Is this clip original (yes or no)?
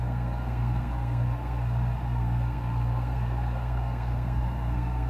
no